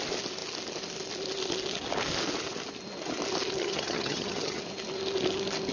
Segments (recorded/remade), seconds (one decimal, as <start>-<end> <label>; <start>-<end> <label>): 0.0-3.6 recorded; 3.6-4.6 remade; 4.6-5.7 recorded